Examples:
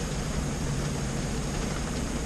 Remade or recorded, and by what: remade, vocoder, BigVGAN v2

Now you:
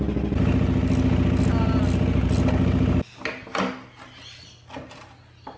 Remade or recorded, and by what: recorded